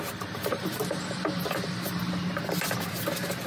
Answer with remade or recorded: recorded